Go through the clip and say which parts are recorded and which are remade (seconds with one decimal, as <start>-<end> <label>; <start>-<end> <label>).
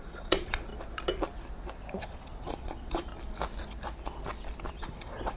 0.0-0.7 remade; 0.7-2.0 recorded; 2.0-3.1 remade; 3.1-4.7 recorded; 4.7-5.4 remade